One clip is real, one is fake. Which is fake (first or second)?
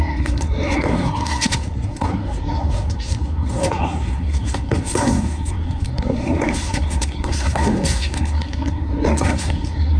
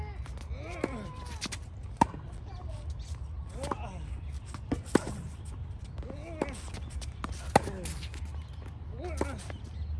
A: first